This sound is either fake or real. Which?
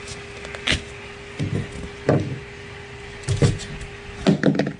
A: real